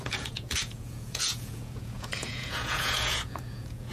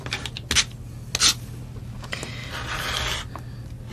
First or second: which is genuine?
second